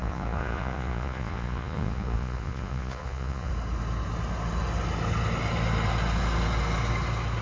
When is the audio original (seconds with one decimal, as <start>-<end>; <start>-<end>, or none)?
3.5-7.4